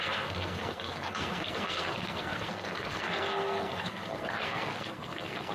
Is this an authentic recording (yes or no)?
no